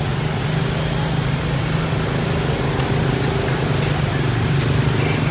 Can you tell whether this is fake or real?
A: real